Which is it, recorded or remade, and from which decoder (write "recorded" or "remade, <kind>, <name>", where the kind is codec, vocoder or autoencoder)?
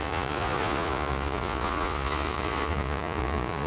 remade, vocoder, Vocos